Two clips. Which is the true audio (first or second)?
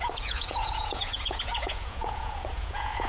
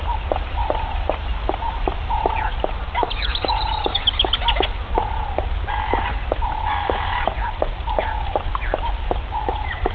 second